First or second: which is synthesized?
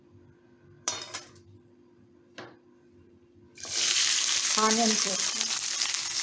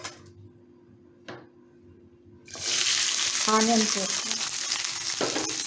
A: first